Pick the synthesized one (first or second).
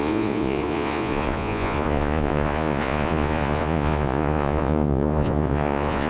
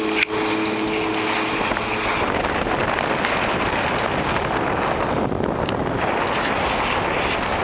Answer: first